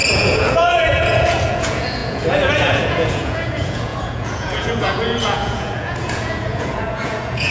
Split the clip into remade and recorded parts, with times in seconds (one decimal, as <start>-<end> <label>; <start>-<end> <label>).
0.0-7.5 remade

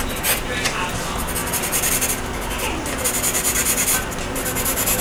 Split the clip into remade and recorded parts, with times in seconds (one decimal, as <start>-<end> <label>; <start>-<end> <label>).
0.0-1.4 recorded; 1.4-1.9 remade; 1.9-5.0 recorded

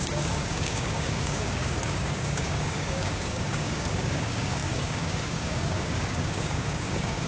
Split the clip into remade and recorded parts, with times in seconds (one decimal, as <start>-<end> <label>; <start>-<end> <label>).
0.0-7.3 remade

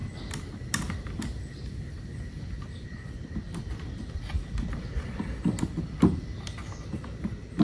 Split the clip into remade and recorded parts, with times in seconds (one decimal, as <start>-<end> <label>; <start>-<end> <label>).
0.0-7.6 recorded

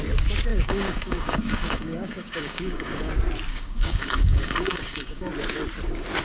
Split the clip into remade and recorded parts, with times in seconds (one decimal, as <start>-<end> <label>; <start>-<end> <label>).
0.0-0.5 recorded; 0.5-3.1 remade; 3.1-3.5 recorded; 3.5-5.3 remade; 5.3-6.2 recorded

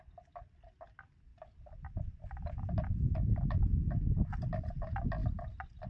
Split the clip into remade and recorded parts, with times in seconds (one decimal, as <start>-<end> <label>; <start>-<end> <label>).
0.0-5.9 recorded